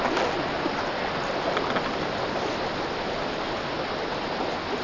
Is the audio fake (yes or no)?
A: no